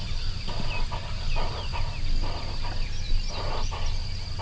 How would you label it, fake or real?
real